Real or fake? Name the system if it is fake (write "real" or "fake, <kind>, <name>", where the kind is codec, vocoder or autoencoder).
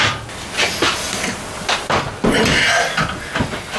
real